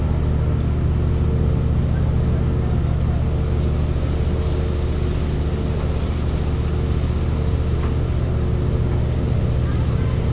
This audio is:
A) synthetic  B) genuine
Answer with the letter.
B